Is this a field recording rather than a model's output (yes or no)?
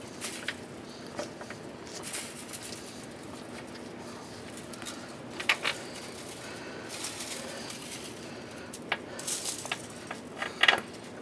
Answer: yes